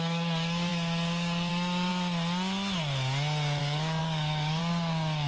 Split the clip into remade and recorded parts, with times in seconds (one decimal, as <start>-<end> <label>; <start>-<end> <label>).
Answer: 0.0-1.9 remade; 1.9-3.6 recorded; 3.6-5.3 remade